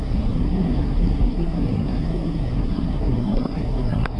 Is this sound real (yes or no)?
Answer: no